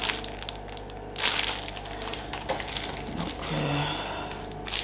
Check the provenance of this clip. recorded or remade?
recorded